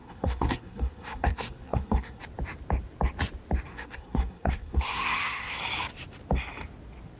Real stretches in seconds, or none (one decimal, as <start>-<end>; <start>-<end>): 2.2-3.7; 5.6-7.2